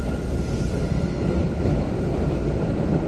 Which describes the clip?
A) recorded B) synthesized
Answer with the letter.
A